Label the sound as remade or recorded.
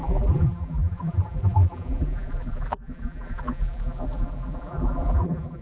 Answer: remade